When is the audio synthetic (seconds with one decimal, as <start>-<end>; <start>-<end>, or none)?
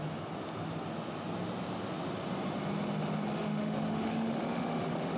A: 3.3-5.2